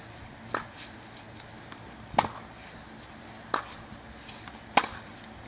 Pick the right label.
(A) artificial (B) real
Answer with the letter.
B